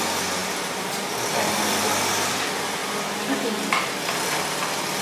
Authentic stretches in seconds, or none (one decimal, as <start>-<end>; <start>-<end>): 0.0-2.8; 4.2-5.0